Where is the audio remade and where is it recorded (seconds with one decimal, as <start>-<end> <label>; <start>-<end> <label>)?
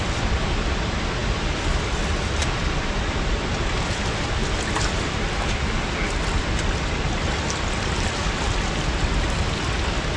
0.0-1.2 recorded; 1.2-6.4 remade; 6.4-8.2 recorded; 8.2-9.0 remade; 9.0-10.2 recorded